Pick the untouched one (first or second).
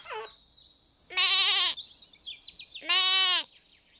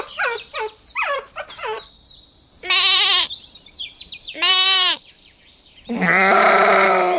first